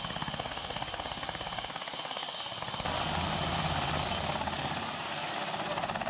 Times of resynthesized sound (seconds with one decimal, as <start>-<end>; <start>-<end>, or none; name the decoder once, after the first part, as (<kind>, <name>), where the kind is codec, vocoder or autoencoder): none